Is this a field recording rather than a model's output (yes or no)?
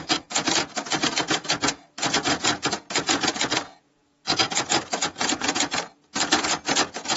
no